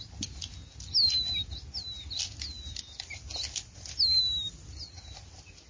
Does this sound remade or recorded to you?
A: recorded